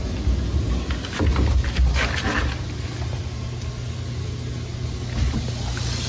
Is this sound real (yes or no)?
yes